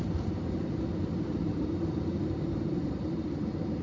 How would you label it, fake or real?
real